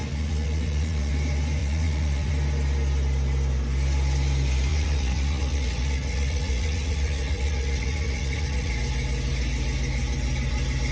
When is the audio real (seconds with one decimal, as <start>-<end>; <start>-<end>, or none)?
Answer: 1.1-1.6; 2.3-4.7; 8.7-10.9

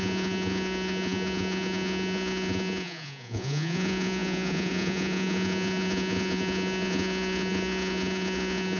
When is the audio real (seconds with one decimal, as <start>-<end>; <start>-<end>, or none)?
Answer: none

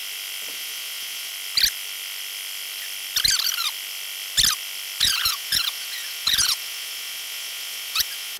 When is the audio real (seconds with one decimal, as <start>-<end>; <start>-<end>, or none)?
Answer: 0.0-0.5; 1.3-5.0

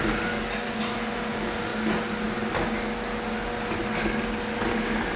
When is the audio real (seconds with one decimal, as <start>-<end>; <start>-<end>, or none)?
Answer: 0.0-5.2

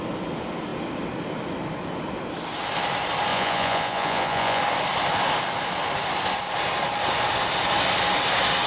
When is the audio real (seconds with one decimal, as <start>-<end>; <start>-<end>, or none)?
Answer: 0.0-3.3; 4.6-8.7